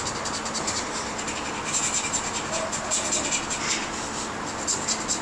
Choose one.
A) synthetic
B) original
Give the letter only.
B